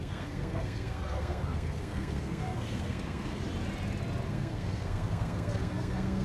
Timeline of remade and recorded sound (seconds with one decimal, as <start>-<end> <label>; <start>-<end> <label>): 0.0-3.4 remade; 3.4-4.3 recorded; 4.3-6.2 remade